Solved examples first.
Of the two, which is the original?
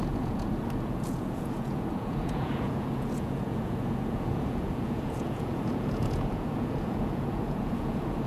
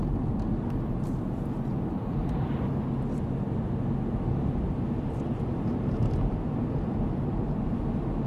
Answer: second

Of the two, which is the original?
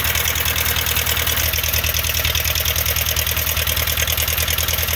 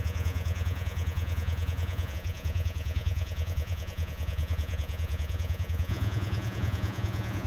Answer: first